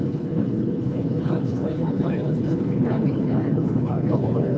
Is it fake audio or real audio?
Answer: fake